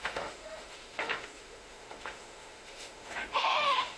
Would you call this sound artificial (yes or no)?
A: yes